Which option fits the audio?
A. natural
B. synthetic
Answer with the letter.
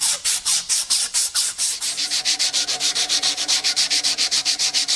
B